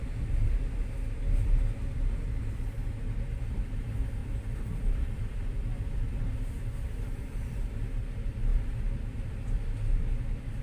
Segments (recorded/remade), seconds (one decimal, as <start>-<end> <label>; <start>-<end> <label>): 0.0-4.2 recorded; 4.2-7.7 remade; 7.7-8.5 recorded; 8.5-10.6 remade